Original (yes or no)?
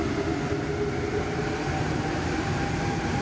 yes